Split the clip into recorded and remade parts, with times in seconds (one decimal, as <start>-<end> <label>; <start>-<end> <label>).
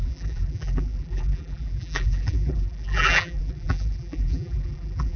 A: 0.0-5.2 remade